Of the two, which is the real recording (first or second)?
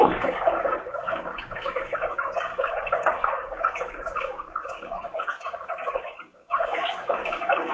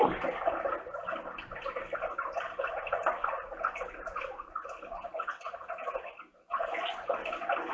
second